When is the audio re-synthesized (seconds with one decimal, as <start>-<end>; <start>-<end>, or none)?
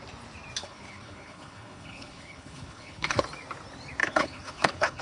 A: 0.6-3.2; 4.0-5.0